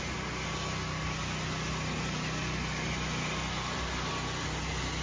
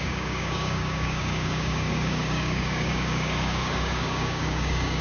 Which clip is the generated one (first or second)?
second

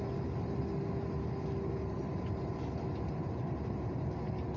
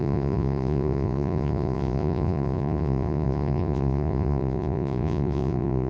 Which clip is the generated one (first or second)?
second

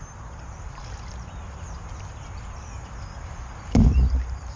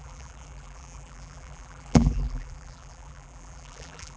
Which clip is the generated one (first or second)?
second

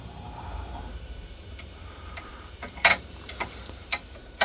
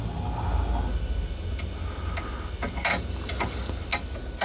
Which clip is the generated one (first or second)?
first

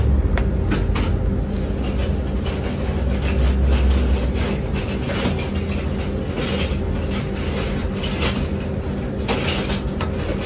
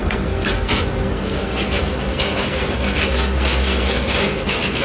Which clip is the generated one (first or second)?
second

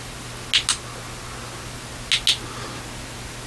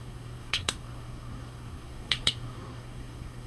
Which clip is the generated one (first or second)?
second